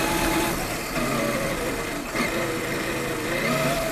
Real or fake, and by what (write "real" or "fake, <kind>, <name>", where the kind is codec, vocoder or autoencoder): real